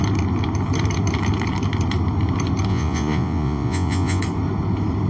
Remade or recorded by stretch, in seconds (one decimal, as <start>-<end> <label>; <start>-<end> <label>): 0.0-2.7 recorded; 2.7-4.2 remade; 4.2-5.1 recorded

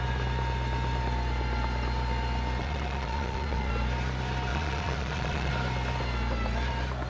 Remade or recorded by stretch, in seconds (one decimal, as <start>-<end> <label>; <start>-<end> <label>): 0.0-2.6 recorded; 2.6-3.7 remade; 3.7-4.5 recorded; 4.5-5.5 remade; 5.5-7.1 recorded

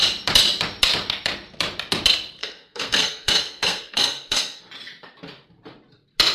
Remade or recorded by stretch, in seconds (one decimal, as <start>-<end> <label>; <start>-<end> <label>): 0.0-2.4 recorded; 2.4-4.6 remade; 4.6-6.3 recorded

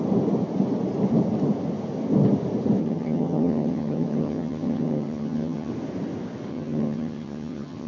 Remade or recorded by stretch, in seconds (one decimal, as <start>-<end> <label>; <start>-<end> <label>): 0.0-2.8 recorded; 2.8-5.7 remade; 5.7-6.5 recorded; 6.5-7.9 remade

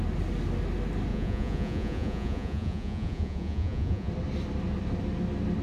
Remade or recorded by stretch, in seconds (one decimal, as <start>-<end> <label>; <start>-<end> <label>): 0.0-1.1 recorded; 1.1-4.1 remade; 4.1-5.6 recorded

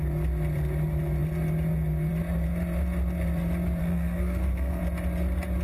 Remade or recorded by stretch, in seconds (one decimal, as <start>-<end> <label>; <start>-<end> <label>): 0.0-3.8 recorded; 3.8-4.8 remade; 4.8-5.6 recorded